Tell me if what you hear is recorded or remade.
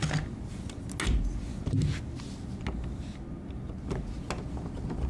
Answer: recorded